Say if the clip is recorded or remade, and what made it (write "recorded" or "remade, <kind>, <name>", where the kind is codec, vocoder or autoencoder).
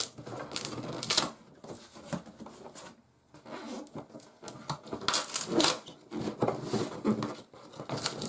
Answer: recorded